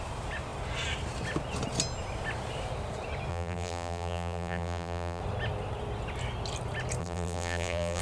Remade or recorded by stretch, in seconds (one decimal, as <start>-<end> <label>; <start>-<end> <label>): 0.0-3.3 recorded; 3.3-5.2 remade; 5.2-7.0 recorded; 7.0-8.0 remade

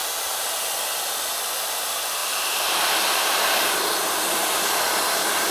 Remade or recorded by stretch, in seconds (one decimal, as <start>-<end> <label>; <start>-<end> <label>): 0.0-0.7 recorded; 0.7-2.2 remade; 2.2-4.3 recorded; 4.3-5.5 remade

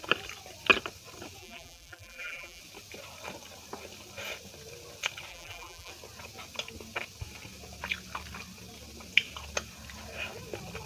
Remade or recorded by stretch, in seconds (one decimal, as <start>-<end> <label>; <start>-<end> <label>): 0.0-1.4 recorded; 1.4-2.6 remade; 2.6-5.3 recorded; 5.3-5.9 remade; 5.9-10.9 recorded

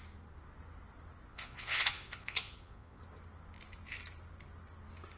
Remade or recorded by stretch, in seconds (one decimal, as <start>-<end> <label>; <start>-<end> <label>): 0.0-1.3 recorded; 1.3-3.0 remade; 3.0-5.2 recorded

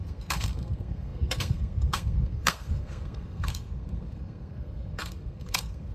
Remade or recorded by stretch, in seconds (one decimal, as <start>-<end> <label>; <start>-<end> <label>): 0.0-5.9 remade

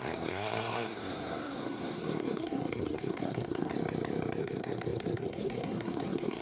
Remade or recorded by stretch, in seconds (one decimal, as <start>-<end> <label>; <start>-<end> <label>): 0.0-3.7 remade; 3.7-4.4 recorded; 4.4-6.4 remade